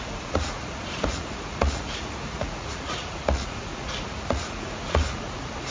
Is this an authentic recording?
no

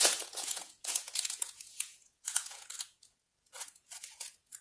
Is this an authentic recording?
no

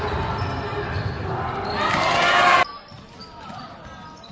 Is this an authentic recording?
yes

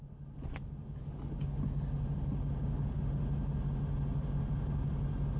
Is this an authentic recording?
yes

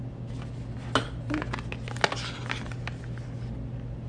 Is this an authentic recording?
yes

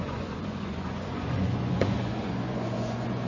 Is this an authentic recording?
no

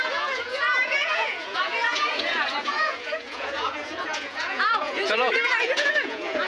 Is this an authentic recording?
no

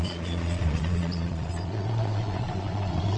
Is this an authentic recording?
no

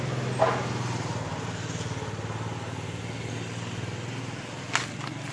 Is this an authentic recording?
yes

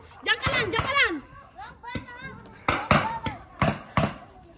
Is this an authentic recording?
yes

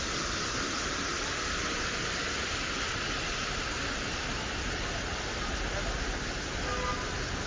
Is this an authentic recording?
yes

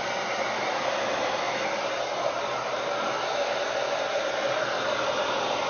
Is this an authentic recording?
yes